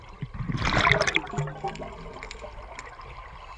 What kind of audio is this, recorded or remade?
recorded